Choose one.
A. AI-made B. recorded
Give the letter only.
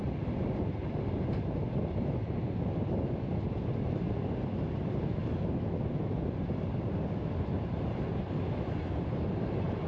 B